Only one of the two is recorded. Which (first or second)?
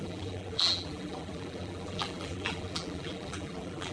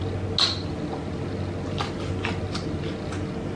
second